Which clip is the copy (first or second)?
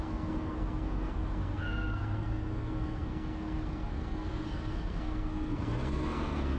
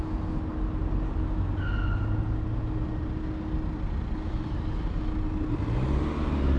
first